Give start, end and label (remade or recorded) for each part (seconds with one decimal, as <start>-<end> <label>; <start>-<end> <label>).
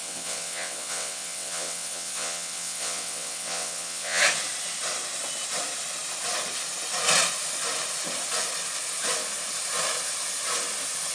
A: 0.0-4.2 remade; 4.2-11.1 recorded